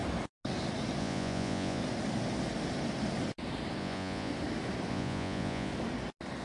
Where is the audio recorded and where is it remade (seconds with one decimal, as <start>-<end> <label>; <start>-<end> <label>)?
0.0-1.0 recorded; 1.0-1.8 remade; 1.8-3.8 recorded; 3.8-4.3 remade; 4.3-4.9 recorded; 4.9-5.7 remade; 5.7-6.4 recorded